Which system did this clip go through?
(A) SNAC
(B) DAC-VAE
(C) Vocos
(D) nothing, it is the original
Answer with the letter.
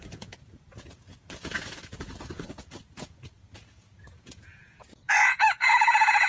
C